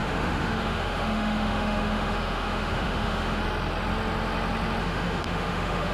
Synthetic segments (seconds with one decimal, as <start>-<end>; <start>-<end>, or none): 0.0-3.4; 4.8-5.9